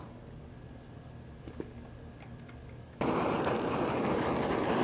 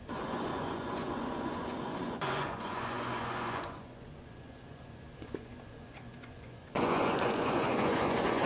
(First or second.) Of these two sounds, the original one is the first